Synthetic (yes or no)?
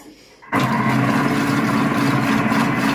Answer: no